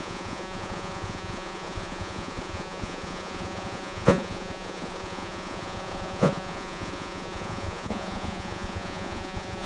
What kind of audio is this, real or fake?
fake